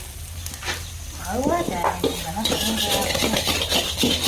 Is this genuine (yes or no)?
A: yes